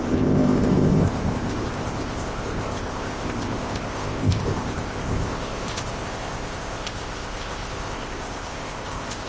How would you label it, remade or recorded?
remade